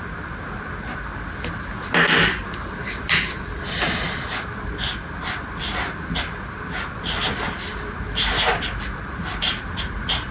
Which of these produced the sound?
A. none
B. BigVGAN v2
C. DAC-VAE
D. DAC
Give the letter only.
A